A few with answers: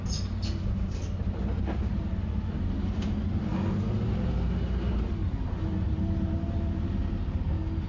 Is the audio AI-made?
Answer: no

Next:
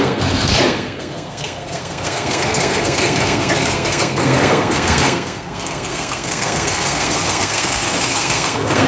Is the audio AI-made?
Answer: yes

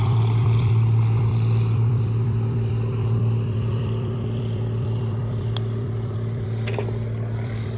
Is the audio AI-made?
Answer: yes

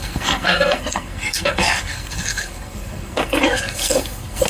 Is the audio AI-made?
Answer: yes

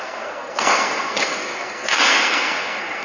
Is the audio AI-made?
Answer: yes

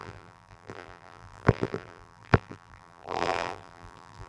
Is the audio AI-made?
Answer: yes